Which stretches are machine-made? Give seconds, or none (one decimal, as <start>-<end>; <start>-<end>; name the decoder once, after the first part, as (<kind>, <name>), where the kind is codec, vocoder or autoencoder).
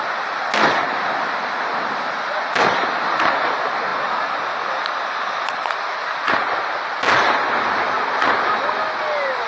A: none